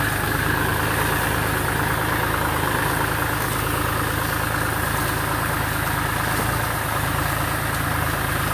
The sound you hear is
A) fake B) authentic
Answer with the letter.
B